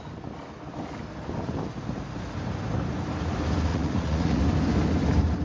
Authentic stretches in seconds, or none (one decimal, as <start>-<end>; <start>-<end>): 0.0-3.7; 4.4-5.4